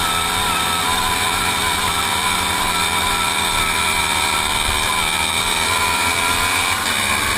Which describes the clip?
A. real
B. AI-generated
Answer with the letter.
B